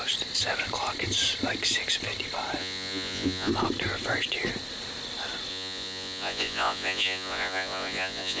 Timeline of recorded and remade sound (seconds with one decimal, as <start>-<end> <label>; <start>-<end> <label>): 0.0-2.6 recorded; 2.6-3.5 remade; 3.5-5.5 recorded; 5.5-8.4 remade